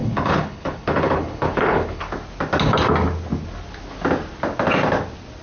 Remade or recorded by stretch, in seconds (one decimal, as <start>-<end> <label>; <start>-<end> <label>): 0.0-2.0 remade; 2.0-5.4 recorded